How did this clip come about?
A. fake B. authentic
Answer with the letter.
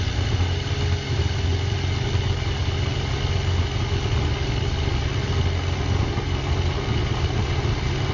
B